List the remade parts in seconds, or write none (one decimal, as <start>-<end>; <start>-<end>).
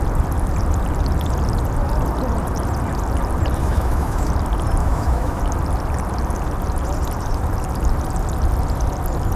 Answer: 3.6-4.3; 4.8-5.4